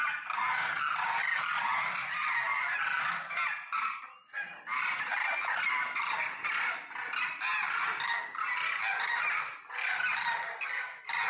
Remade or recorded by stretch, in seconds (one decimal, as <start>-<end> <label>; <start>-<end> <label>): 0.0-11.3 recorded